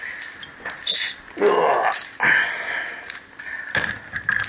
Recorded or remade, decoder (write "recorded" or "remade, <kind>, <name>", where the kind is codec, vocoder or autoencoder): recorded